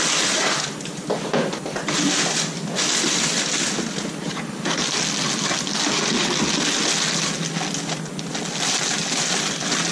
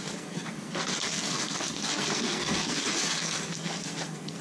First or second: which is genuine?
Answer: first